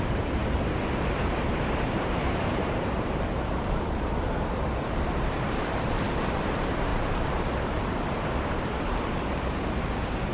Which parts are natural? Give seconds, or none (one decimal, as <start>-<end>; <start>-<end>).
none